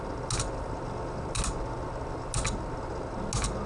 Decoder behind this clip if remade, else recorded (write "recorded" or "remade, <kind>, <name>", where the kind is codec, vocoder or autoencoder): recorded